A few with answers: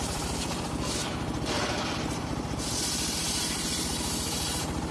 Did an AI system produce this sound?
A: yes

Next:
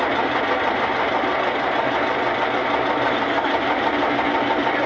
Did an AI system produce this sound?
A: no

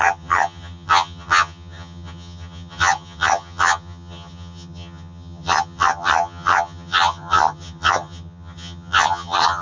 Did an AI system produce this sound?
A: yes